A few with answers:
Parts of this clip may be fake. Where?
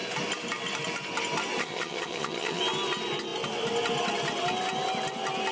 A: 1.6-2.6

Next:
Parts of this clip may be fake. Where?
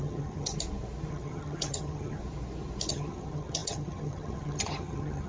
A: 0.0-0.5; 1.1-2.2; 2.9-5.3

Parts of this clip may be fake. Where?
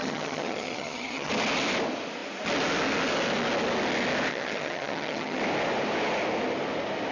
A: 0.0-1.3; 4.3-5.4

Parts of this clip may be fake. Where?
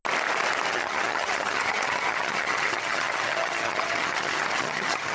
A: 0.7-5.1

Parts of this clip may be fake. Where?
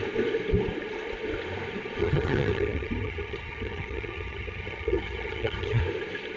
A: 2.0-5.8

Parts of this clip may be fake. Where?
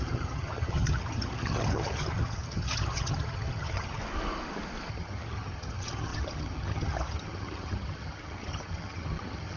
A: 0.0-4.0; 4.9-9.6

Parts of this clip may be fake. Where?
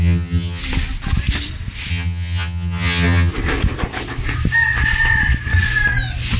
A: 0.0-0.6; 1.9-3.3